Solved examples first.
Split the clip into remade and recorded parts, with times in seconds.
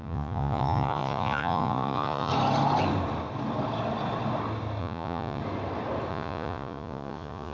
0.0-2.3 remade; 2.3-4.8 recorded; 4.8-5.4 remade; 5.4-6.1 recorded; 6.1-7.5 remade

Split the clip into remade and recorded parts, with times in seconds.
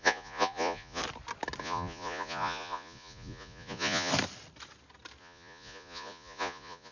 0.0-1.0 remade; 1.0-1.6 recorded; 1.6-4.1 remade; 4.1-5.2 recorded; 5.2-6.9 remade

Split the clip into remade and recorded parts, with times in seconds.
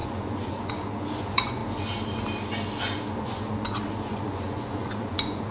0.0-1.6 remade; 1.6-3.2 recorded; 3.2-5.5 remade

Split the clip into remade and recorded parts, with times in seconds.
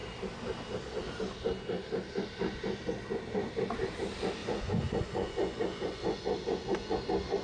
0.0-4.4 recorded; 4.4-7.0 remade; 7.0-7.4 recorded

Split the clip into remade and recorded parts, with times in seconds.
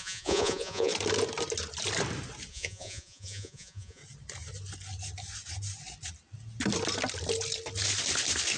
0.0-0.9 remade; 0.9-2.5 recorded; 2.5-4.0 remade; 4.0-8.6 recorded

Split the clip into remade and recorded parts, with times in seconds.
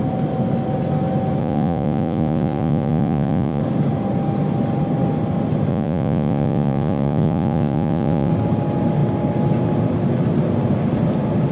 0.0-1.4 recorded; 1.4-3.6 remade; 3.6-5.7 recorded; 5.7-8.3 remade; 8.3-11.5 recorded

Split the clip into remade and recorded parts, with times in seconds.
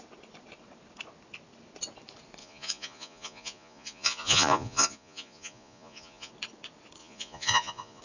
0.0-2.4 recorded; 2.4-6.3 remade; 6.3-7.0 recorded; 7.0-8.0 remade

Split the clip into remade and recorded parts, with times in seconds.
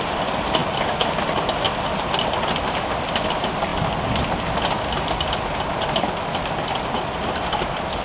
0.0-8.0 recorded